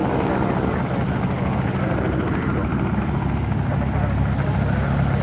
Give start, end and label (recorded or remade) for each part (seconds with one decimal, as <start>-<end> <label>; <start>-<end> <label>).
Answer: 0.0-5.2 recorded